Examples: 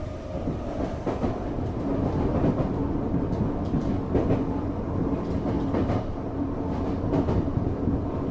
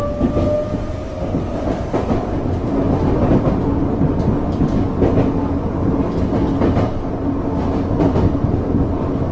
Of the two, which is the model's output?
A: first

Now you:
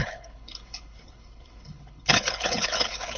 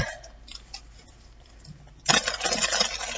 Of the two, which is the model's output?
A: first